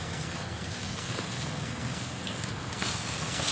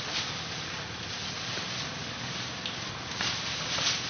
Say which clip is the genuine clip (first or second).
second